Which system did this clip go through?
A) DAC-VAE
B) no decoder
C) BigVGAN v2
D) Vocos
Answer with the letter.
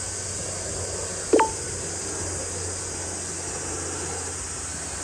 B